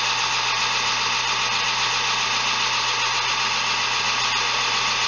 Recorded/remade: recorded